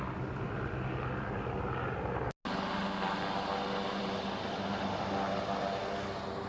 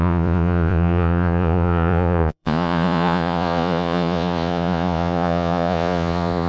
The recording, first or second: first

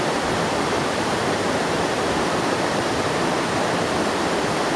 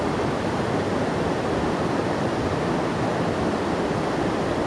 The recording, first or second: second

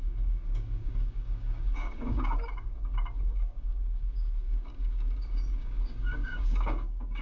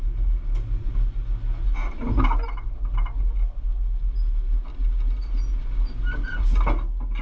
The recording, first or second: second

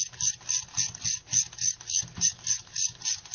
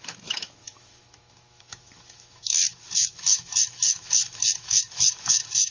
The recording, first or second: first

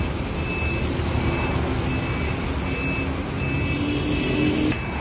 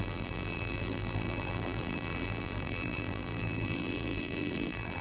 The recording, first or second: first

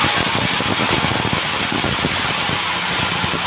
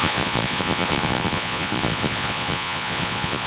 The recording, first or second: first